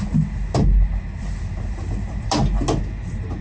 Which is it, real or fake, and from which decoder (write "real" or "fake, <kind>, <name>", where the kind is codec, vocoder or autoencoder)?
real